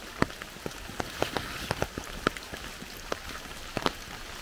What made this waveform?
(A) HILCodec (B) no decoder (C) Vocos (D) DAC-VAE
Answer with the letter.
B